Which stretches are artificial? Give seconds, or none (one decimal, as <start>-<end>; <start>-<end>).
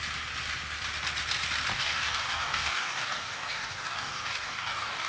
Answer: 1.7-5.1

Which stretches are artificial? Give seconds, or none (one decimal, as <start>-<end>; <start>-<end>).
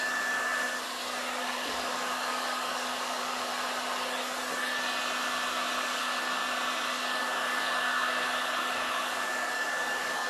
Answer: 0.0-0.7; 1.4-3.5; 5.8-6.4; 7.2-10.3